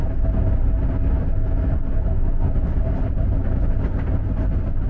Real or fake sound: real